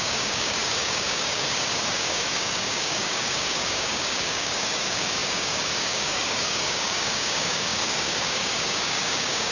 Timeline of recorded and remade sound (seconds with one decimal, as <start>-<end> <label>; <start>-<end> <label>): 0.0-9.5 remade